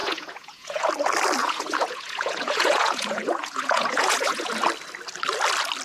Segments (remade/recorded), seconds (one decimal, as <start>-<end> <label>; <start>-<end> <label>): 0.0-0.9 remade; 0.9-1.4 recorded; 1.4-4.5 remade; 4.5-5.8 recorded